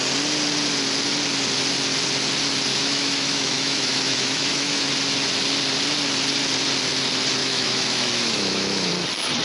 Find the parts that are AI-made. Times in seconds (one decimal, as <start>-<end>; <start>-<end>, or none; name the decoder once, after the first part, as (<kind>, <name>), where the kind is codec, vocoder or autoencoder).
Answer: 2.7-4.9 (autoencoder, DAC-VAE); 7.4-8.9